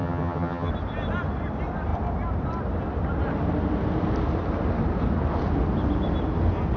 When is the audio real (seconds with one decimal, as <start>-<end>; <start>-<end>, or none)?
0.7-6.8